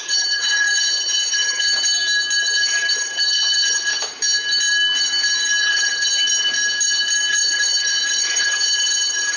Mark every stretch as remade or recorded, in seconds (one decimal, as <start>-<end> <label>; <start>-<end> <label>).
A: 0.0-1.7 remade; 1.7-2.4 recorded; 2.4-3.9 remade; 3.9-5.6 recorded; 5.6-6.2 remade; 6.2-7.3 recorded; 7.3-9.4 remade